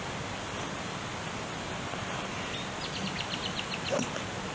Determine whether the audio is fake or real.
real